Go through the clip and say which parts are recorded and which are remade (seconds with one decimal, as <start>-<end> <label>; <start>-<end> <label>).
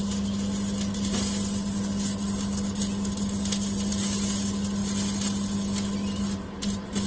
0.0-7.1 recorded